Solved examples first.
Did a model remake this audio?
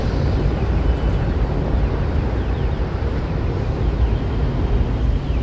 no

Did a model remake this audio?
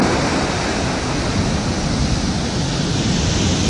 no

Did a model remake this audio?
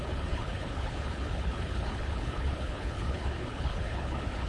yes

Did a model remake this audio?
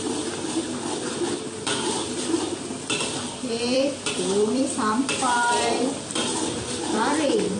yes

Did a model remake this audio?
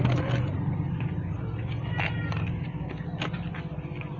no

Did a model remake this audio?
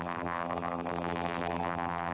yes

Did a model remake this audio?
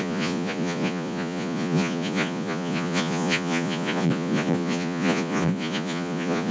yes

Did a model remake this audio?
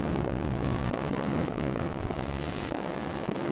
yes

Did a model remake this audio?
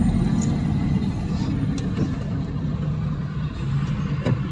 no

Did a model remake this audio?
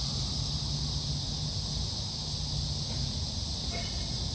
no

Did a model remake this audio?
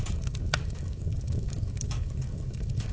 yes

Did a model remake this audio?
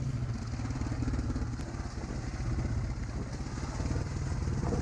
no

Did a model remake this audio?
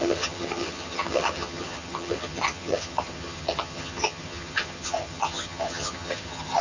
yes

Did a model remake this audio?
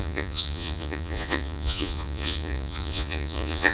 yes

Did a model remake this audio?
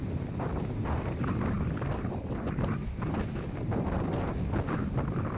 no